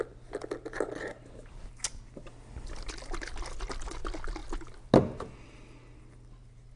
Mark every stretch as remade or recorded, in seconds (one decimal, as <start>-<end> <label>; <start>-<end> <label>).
0.0-6.8 recorded